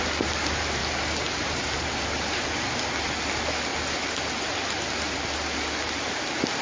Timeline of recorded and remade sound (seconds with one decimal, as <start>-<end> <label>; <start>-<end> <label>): 0.0-6.6 recorded